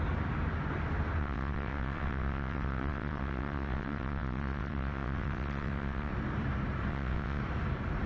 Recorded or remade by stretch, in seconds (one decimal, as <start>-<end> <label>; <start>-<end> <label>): 0.0-1.2 recorded; 1.2-6.1 remade; 6.1-6.9 recorded; 6.9-7.4 remade; 7.4-8.1 recorded